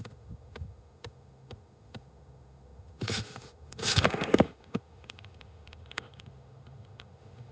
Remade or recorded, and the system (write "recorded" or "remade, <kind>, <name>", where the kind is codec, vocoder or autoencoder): remade, autoencoder, DAC-VAE